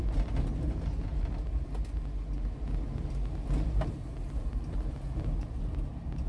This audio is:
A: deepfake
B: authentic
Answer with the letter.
B